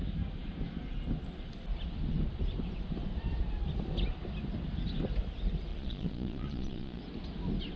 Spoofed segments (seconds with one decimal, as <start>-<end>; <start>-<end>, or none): 5.7-7.0